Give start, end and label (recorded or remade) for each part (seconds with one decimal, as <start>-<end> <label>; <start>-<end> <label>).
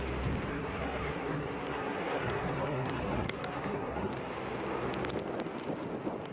0.0-0.5 recorded; 0.5-4.1 remade; 4.1-6.3 recorded